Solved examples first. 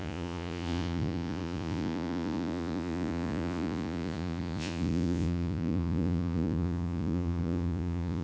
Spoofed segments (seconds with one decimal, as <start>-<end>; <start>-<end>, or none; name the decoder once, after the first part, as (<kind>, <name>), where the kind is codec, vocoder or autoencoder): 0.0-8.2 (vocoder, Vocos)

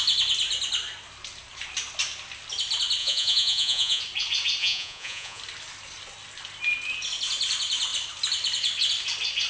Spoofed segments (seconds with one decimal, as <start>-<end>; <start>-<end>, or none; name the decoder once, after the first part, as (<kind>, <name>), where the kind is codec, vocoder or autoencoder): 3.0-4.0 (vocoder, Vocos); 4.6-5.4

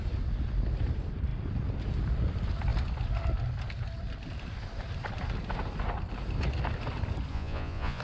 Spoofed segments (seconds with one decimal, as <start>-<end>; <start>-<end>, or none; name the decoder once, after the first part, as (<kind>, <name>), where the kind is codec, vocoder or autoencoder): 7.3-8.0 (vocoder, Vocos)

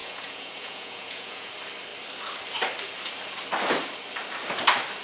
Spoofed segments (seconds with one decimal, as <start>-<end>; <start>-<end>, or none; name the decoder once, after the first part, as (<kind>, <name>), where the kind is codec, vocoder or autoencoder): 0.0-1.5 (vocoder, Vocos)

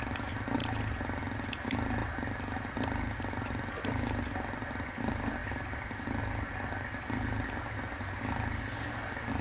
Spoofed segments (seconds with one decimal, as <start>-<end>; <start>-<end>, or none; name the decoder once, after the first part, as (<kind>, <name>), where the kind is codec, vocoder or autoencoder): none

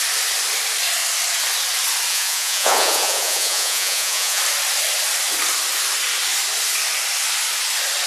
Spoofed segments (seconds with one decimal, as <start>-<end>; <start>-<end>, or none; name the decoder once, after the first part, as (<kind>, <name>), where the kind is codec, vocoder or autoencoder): 2.1-4.4 (vocoder, Vocos)